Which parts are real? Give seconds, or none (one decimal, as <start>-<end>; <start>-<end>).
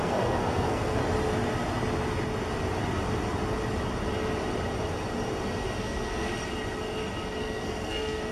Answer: 1.0-5.8; 6.3-7.4